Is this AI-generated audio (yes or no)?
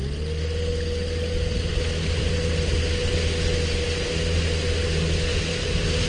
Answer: no